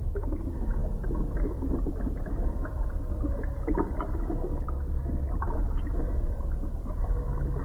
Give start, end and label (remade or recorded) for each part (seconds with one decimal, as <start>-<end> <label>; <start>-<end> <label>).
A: 0.0-7.6 recorded